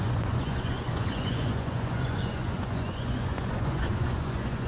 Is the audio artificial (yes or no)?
yes